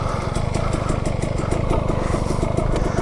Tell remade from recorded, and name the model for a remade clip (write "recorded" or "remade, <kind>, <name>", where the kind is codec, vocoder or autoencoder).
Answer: recorded